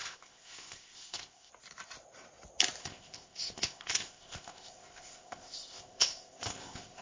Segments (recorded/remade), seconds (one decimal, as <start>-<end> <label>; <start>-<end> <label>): 0.0-1.5 remade; 1.5-2.8 recorded; 2.8-7.0 remade